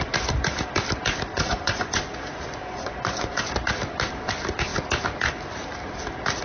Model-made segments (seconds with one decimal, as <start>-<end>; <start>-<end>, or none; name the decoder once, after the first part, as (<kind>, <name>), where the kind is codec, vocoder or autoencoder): 1.3-1.9 (vocoder, Vocos); 2.6-3.4